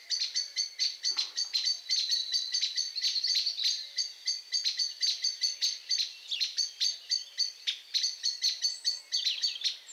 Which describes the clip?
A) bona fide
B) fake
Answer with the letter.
A